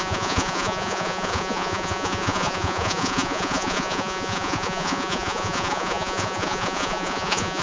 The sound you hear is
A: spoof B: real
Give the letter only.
A